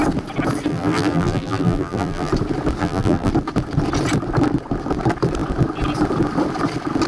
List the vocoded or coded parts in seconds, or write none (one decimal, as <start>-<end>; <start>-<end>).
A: 0.7-2.3; 2.8-3.3